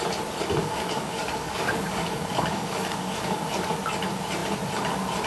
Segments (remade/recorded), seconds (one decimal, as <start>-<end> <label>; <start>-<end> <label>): 0.0-0.6 recorded; 0.6-3.7 remade; 3.7-5.3 recorded